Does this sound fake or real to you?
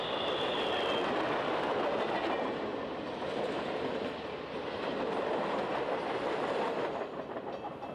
real